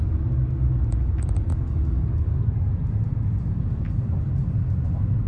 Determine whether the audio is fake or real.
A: real